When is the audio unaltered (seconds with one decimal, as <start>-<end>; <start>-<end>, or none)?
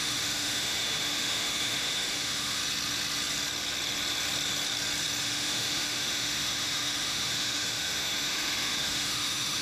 2.6-5.2